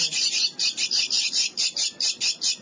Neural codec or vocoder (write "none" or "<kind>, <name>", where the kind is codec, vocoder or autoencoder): none